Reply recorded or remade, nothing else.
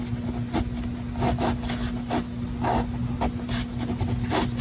recorded